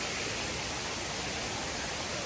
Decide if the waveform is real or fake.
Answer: real